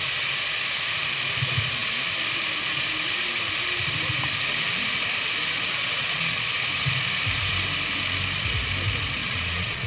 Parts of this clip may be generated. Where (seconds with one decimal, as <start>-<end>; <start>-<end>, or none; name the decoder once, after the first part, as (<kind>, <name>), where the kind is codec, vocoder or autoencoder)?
5.8-6.5 (vocoder, Vocos); 9.2-9.9